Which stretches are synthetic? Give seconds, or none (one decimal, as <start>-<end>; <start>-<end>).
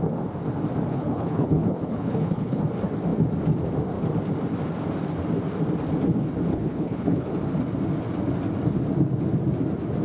0.9-2.6; 6.5-7.3